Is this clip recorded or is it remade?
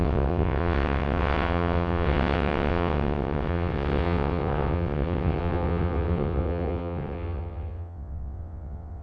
remade